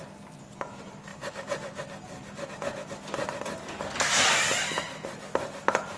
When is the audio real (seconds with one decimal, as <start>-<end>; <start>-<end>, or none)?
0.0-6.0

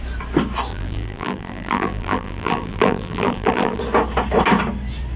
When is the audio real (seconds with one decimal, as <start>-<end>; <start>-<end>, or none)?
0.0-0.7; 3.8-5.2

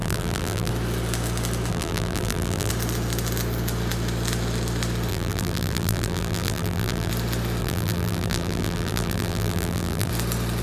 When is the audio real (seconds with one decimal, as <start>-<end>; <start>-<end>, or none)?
0.7-1.7; 2.7-5.1; 7.1-7.6; 10.1-10.6

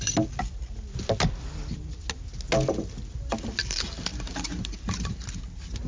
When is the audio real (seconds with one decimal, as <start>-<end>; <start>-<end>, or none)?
0.0-4.1; 5.1-5.9

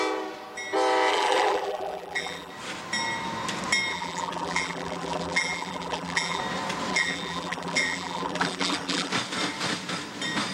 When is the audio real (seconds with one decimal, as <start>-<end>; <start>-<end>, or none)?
0.0-1.1; 2.5-3.9; 6.4-6.9; 9.1-10.5

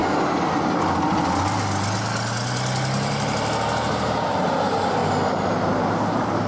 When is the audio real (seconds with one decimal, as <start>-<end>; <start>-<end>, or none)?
0.0-3.9; 5.0-5.6

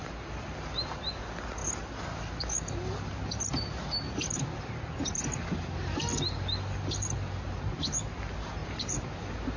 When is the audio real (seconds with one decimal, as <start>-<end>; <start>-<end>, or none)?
0.0-9.6

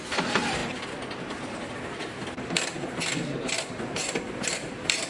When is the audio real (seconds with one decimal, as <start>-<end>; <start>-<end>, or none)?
0.6-3.7